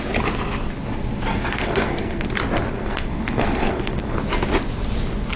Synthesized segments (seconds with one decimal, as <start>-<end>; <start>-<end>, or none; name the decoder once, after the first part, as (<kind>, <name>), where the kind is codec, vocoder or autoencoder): 1.3-2.3 (codec, SNAC); 2.7-4.2